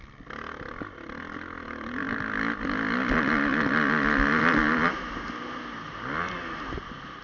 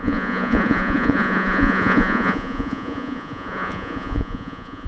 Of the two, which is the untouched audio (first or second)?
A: first